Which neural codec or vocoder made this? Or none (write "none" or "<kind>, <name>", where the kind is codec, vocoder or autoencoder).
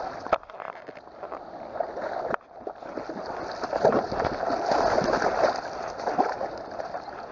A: none